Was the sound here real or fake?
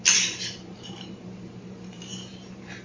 fake